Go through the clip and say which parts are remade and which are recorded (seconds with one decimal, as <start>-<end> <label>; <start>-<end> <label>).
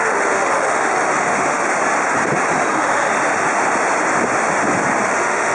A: 0.0-1.6 remade; 1.6-2.7 recorded; 2.7-3.1 remade; 3.1-5.1 recorded; 5.1-5.5 remade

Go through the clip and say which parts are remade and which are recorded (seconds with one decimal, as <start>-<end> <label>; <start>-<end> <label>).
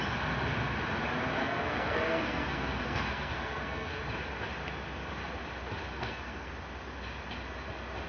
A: 0.0-1.4 recorded; 1.4-4.0 remade; 4.0-5.9 recorded; 5.9-6.5 remade; 6.5-8.1 recorded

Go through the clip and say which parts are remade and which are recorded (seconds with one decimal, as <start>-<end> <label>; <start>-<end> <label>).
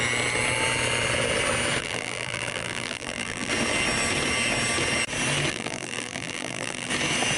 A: 0.0-1.8 recorded; 1.8-3.5 remade; 3.5-5.5 recorded; 5.5-6.9 remade; 6.9-7.4 recorded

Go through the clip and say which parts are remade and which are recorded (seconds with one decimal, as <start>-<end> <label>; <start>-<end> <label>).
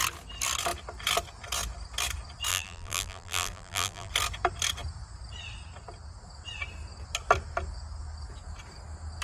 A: 0.0-2.5 recorded; 2.5-4.1 remade; 4.1-9.2 recorded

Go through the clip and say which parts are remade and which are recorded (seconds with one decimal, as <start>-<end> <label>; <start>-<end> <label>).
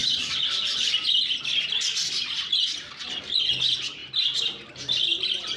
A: 0.0-5.6 recorded